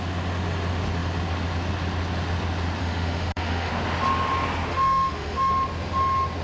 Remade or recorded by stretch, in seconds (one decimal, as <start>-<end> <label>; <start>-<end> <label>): 0.0-2.8 recorded; 2.8-3.7 remade; 3.7-4.7 recorded; 4.7-5.5 remade; 5.5-6.4 recorded